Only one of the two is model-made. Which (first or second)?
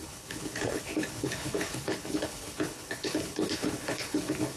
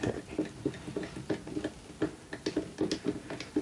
first